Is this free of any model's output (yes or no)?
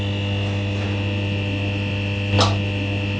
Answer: yes